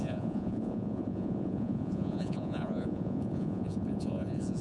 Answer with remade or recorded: remade